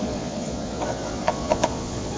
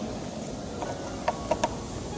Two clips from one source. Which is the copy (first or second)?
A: first